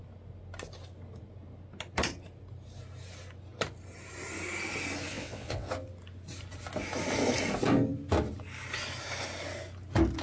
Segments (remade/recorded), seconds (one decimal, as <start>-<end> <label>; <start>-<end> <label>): 0.0-5.1 recorded; 5.1-5.7 remade; 5.7-10.2 recorded